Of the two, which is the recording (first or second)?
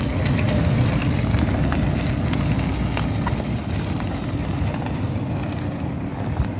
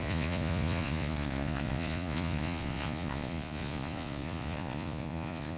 first